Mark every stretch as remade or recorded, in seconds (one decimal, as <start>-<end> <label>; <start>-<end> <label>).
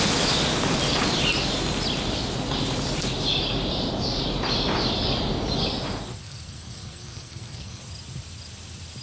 0.0-6.2 recorded; 6.2-7.8 remade; 7.8-9.0 recorded